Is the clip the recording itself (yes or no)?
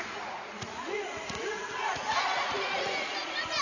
no